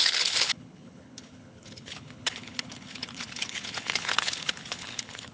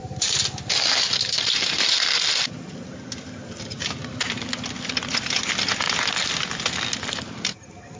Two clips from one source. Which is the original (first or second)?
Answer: second